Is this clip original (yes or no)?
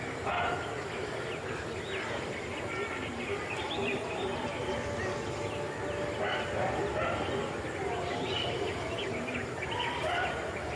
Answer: yes